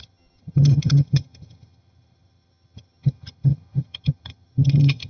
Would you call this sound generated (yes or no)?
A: yes